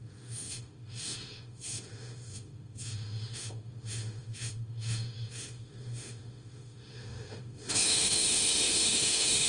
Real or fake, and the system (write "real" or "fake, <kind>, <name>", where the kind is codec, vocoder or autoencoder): fake, autoencoder, DAC-VAE